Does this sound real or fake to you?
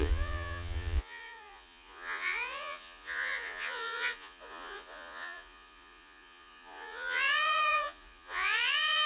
fake